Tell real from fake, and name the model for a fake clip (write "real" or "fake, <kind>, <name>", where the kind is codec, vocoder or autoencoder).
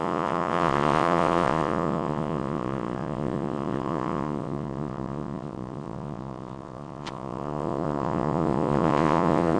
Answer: fake, vocoder, Vocos